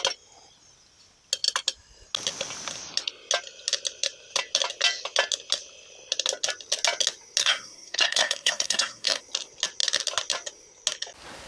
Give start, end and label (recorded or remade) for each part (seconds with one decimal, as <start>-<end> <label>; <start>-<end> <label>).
0.0-7.4 recorded; 7.4-9.2 remade; 9.2-11.5 recorded